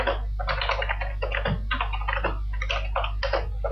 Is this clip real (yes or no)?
yes